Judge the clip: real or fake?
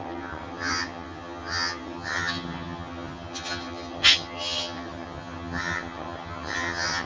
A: fake